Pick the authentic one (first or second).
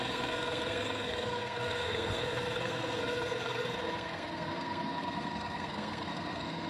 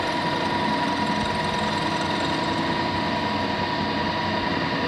second